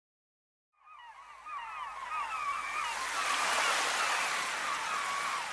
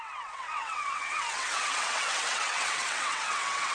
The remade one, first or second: second